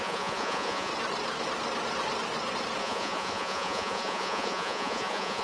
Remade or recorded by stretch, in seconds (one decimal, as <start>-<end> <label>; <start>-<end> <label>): 0.0-0.9 remade; 0.9-2.8 recorded; 2.8-5.4 remade